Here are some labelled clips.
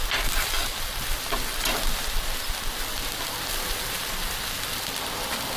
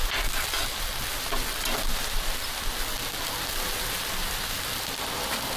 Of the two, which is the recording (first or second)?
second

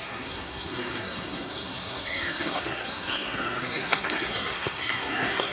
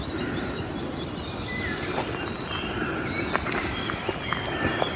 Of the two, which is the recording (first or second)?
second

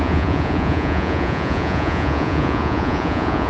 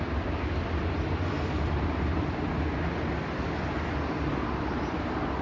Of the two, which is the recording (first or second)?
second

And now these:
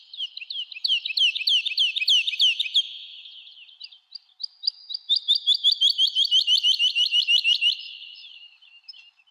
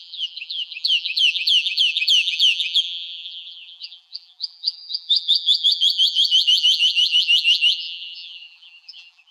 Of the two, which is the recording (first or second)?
first